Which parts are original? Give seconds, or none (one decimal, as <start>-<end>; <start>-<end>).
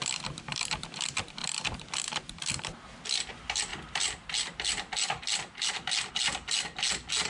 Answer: 0.0-7.3